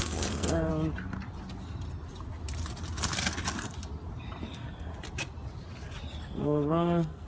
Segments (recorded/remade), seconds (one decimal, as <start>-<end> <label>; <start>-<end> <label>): 0.0-0.7 remade; 0.7-4.4 recorded; 4.4-4.9 remade; 4.9-6.2 recorded; 6.2-7.3 remade